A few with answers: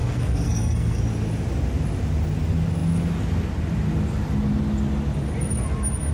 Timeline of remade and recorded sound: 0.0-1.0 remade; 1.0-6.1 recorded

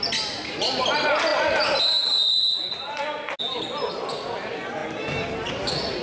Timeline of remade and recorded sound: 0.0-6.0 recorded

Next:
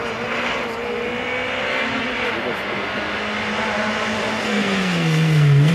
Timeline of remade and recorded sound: 0.0-4.4 recorded; 4.4-5.7 remade